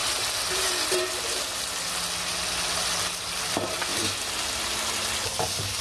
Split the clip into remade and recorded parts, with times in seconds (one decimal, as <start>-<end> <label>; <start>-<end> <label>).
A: 0.0-3.5 recorded; 3.5-5.8 remade